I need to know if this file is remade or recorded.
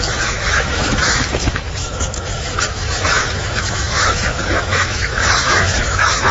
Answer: remade